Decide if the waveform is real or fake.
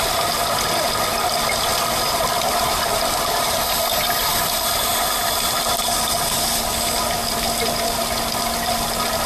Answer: real